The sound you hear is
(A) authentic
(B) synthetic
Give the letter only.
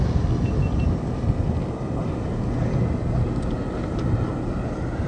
A